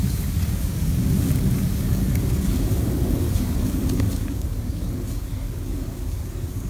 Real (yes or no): no